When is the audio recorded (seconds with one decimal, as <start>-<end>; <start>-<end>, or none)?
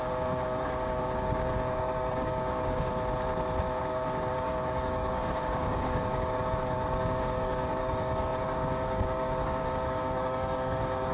2.9-3.8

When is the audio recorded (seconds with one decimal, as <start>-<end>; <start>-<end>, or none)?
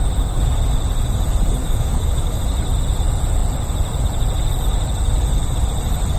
0.0-1.6; 2.4-6.2